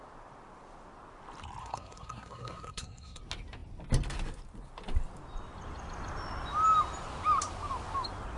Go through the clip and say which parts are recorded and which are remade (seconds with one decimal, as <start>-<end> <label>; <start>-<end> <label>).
0.0-1.6 recorded; 1.6-3.2 remade; 3.2-8.4 recorded